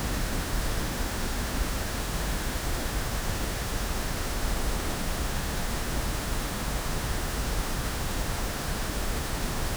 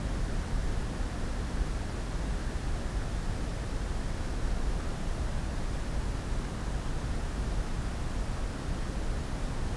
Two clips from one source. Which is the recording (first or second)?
second